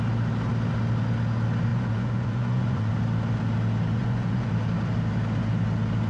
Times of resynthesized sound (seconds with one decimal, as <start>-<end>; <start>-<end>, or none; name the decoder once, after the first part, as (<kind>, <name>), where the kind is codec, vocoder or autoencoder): 1.7-2.9 (vocoder, Vocos); 4.0-4.5